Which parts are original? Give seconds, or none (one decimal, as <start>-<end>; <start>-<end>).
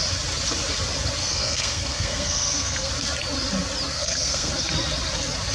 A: 0.0-1.2; 2.9-3.9; 4.5-5.5